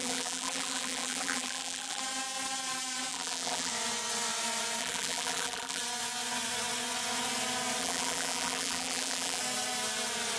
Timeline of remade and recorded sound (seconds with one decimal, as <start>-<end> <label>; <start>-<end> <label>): 0.0-2.0 remade; 2.0-3.1 recorded; 3.1-3.7 remade; 3.7-4.8 recorded; 4.8-5.8 remade; 5.8-7.8 recorded; 7.8-9.4 remade; 9.4-10.4 recorded